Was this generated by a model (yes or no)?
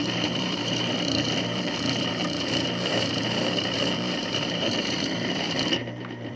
yes